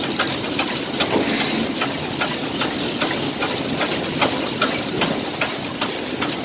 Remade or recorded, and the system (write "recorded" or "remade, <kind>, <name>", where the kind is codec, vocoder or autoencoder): recorded